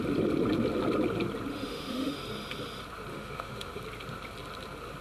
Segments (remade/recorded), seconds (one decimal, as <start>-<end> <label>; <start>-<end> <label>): 0.0-1.5 recorded; 1.5-2.2 remade; 2.2-3.1 recorded; 3.1-3.8 remade; 3.8-5.0 recorded